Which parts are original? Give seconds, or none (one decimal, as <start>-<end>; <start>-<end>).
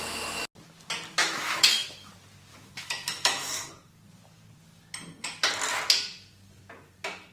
0.0-1.2; 2.1-2.5; 3.7-7.3